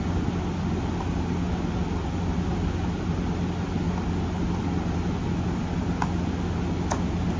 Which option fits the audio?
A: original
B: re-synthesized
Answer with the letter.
A